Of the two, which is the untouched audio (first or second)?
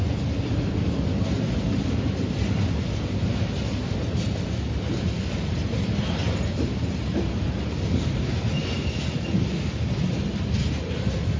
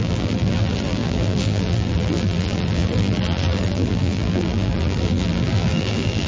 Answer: first